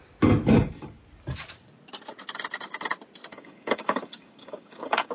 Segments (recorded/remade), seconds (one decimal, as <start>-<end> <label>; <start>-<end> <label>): 0.0-3.3 recorded; 3.3-5.1 remade